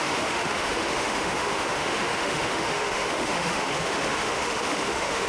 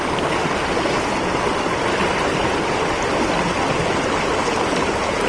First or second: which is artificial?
first